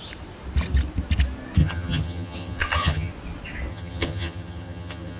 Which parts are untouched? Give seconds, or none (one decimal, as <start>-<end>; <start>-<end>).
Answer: 0.0-1.6; 3.1-3.7